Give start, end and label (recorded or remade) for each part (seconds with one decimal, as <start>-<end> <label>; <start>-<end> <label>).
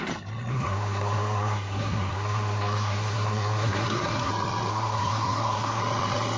0.0-0.5 recorded; 0.5-4.3 remade; 4.3-4.7 recorded; 4.7-5.8 remade; 5.8-6.4 recorded